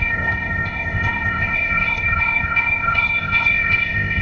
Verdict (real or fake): fake